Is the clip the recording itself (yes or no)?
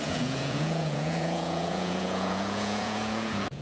no